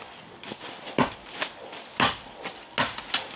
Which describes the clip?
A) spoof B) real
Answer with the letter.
B